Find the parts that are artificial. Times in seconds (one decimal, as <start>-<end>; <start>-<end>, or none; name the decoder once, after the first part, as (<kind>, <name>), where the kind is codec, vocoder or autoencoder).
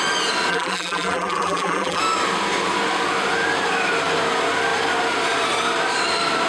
0.5-2.0 (vocoder, BigVGAN v2)